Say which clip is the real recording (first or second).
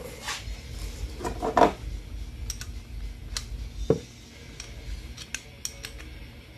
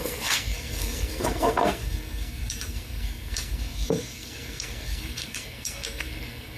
first